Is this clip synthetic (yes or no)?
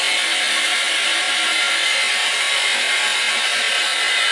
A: no